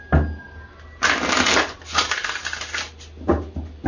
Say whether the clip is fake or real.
real